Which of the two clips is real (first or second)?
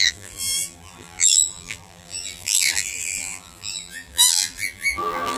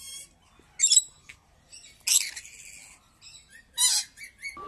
second